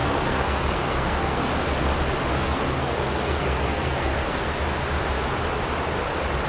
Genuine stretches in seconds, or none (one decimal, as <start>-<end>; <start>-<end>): 1.5-2.3; 4.6-6.5